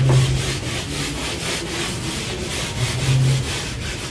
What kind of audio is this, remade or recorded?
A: recorded